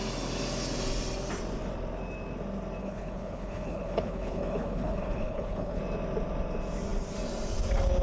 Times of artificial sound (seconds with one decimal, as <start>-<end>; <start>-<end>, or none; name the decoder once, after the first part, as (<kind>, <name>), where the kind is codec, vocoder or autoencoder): 2.8-5.8 (codec, HILCodec)